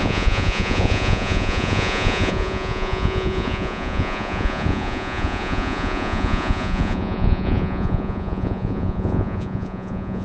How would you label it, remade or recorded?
remade